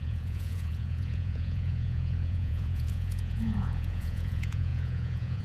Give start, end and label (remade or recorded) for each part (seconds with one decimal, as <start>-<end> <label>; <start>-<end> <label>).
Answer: 0.0-5.4 remade

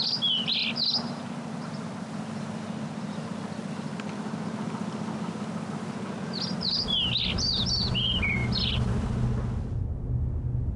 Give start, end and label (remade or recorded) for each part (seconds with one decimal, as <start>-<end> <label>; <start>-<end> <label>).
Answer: 0.0-10.8 recorded

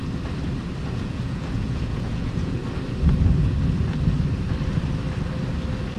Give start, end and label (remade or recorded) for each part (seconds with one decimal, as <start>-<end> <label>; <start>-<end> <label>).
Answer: 0.0-0.9 recorded; 0.9-2.6 remade; 2.6-6.0 recorded

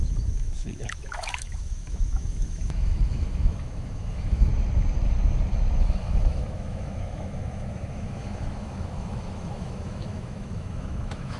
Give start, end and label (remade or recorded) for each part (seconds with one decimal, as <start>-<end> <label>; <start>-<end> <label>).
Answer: 0.0-4.5 remade; 4.5-5.8 recorded; 5.8-11.4 remade

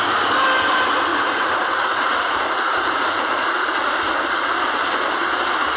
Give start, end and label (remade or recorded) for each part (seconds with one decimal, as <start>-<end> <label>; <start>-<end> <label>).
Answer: 0.0-1.1 recorded; 1.1-4.1 remade; 4.1-5.8 recorded

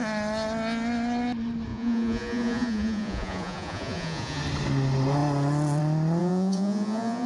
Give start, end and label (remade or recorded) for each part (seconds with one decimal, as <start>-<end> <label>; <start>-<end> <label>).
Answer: 0.0-1.7 recorded; 1.7-4.4 remade; 4.4-6.2 recorded; 6.2-7.3 remade

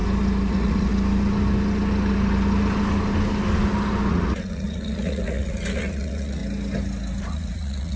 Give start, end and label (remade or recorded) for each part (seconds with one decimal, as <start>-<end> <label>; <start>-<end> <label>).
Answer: 0.0-0.5 recorded; 0.5-0.9 remade; 0.9-4.1 recorded; 4.1-6.4 remade; 6.4-7.2 recorded; 7.2-8.0 remade

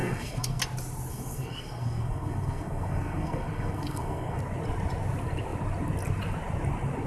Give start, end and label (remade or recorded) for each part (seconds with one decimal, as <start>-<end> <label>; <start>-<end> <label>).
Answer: 0.0-0.6 remade; 0.6-1.1 recorded; 1.1-4.4 remade; 4.4-7.1 recorded